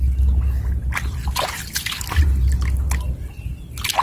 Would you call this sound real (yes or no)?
yes